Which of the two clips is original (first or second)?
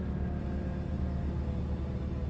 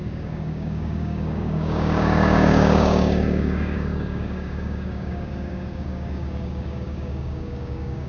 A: first